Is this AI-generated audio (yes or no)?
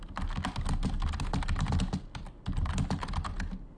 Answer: no